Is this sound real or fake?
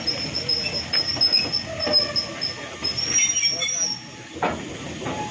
real